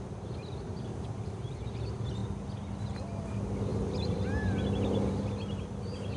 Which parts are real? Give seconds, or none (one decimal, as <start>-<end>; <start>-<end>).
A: 2.2-2.9; 3.7-5.1